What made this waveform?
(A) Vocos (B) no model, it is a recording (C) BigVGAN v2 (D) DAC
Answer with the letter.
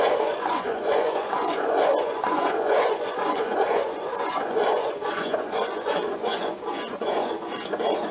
A